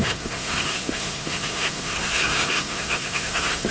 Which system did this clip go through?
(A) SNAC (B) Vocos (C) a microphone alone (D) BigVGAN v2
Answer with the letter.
A